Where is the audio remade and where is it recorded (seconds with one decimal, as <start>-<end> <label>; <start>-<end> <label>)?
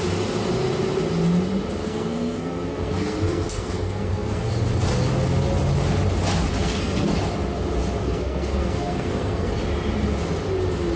0.0-1.8 recorded; 1.8-4.5 remade; 4.5-6.5 recorded; 6.5-7.1 remade; 7.1-8.0 recorded; 8.0-9.5 remade; 9.5-11.0 recorded